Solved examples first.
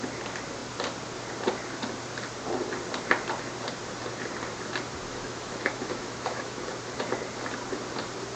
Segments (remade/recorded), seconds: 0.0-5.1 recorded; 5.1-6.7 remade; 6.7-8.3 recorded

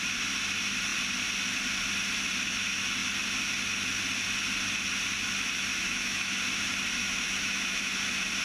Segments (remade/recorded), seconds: 0.0-5.7 recorded; 5.7-6.4 remade; 6.4-7.0 recorded; 7.0-7.8 remade; 7.8-8.4 recorded